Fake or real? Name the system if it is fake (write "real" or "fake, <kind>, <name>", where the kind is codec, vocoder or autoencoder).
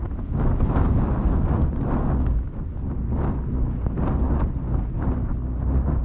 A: real